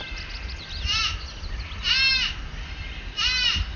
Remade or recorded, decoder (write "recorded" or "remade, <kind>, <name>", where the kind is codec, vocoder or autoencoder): recorded